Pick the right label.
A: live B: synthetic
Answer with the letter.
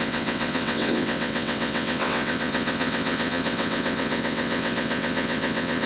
B